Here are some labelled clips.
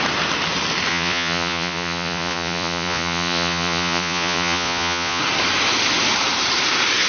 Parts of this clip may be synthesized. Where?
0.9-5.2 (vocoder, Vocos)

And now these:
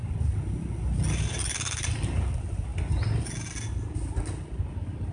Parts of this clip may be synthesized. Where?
none

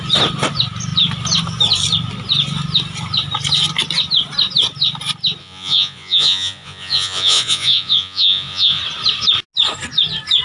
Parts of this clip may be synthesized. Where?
5.4-8.8 (vocoder, Vocos)

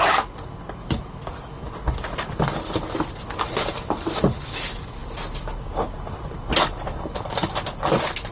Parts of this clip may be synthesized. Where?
0.8-1.7 (autoencoder, DAC-VAE)